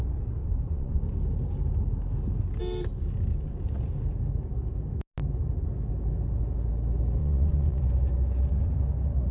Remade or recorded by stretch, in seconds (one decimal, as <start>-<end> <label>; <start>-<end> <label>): 0.0-0.4 recorded; 0.4-1.0 remade; 1.0-7.2 recorded; 7.2-7.8 remade; 7.8-9.3 recorded

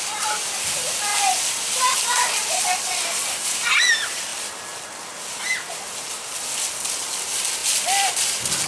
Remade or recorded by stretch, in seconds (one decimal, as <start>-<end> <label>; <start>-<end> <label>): 0.0-8.7 recorded

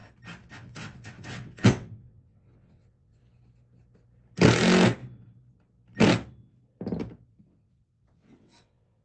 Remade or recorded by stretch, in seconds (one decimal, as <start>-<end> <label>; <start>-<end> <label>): 0.0-0.5 recorded; 0.5-3.2 remade; 3.2-7.4 recorded; 7.4-9.0 remade

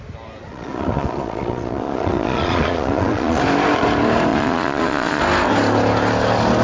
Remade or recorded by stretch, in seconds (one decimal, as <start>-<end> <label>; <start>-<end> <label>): 0.0-0.5 recorded; 0.5-3.4 remade; 3.4-4.3 recorded; 4.3-5.2 remade; 5.2-6.6 recorded

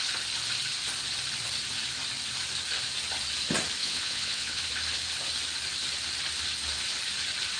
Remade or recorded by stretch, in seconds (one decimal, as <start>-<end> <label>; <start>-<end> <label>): 0.0-3.8 recorded; 3.8-4.6 remade; 4.6-7.6 recorded

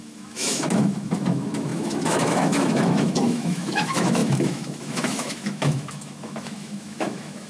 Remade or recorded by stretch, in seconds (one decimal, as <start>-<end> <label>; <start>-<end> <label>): 0.0-7.5 remade